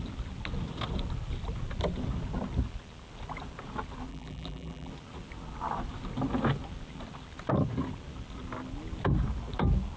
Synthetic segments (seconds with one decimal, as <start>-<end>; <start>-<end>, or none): 4.1-4.9